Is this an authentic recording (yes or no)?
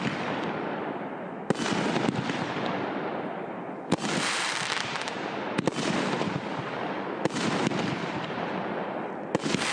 yes